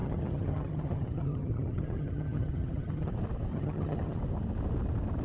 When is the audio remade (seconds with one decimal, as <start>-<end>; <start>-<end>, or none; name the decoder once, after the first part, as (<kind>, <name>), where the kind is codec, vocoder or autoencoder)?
0.0-3.1 (vocoder, HiFi-GAN); 3.5-4.2